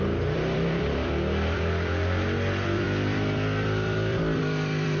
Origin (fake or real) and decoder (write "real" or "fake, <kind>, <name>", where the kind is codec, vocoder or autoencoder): fake, vocoder, BigVGAN v2